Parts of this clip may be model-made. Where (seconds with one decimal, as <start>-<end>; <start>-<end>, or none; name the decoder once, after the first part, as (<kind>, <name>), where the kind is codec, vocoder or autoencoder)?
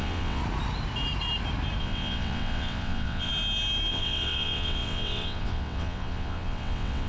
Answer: 0.0-0.4 (vocoder, WaveNeXt); 1.8-3.3; 3.9-7.1